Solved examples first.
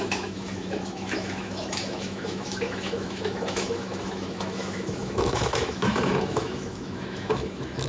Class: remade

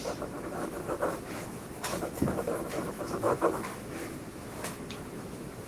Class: remade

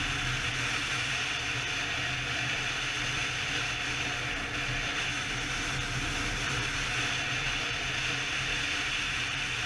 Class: recorded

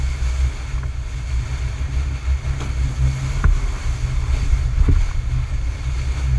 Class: recorded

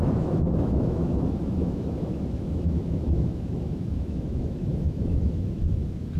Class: remade